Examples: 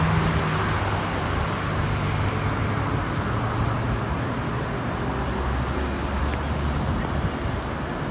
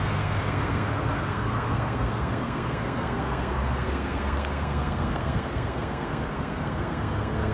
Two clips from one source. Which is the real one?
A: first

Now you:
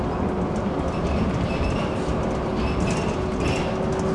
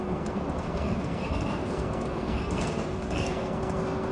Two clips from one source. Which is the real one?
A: first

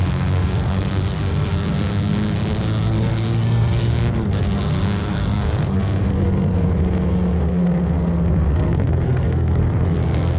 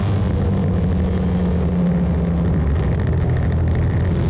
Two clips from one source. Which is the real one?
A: second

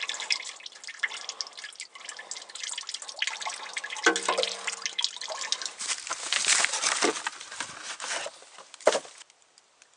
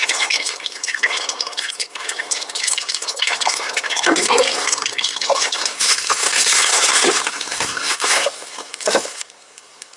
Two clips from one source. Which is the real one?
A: first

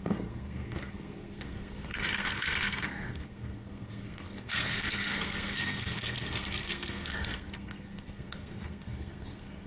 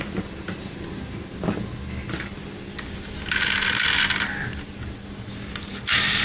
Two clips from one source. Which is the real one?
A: second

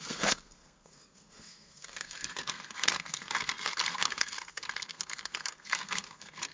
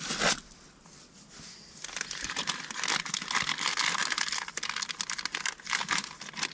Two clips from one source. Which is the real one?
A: second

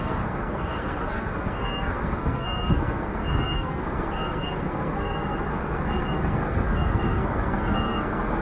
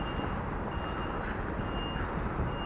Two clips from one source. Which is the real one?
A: second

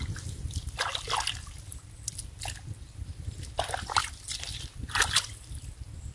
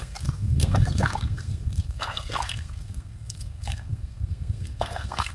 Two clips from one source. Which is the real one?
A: first